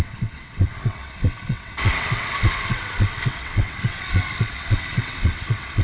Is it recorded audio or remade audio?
remade